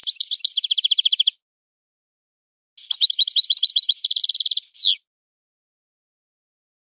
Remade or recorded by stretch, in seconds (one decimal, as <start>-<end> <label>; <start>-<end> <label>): 0.0-7.0 recorded

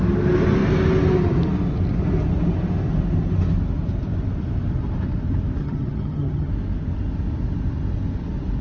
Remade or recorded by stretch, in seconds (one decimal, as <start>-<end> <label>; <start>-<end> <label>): 0.0-5.6 recorded; 5.6-6.5 remade; 6.5-8.6 recorded